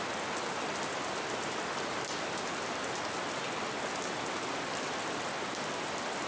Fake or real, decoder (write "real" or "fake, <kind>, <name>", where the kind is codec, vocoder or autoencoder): real